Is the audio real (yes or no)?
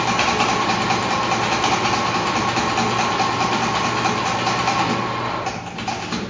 yes